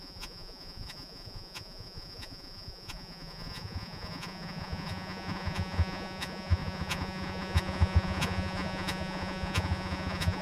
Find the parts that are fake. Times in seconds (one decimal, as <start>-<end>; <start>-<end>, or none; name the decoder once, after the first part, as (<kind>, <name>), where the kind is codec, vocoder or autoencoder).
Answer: 0.0-10.4 (vocoder, Vocos)